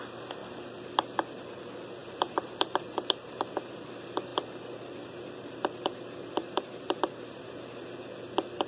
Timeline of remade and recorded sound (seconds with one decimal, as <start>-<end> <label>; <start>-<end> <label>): 0.0-2.0 recorded; 2.0-3.8 remade; 3.8-6.4 recorded; 6.4-7.4 remade; 7.4-8.7 recorded